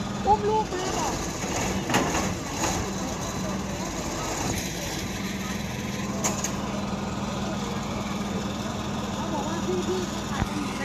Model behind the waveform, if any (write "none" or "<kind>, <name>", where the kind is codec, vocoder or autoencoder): none